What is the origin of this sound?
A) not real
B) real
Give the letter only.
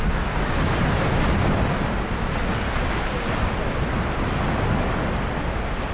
B